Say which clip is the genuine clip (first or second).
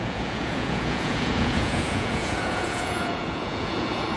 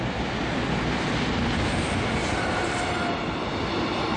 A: second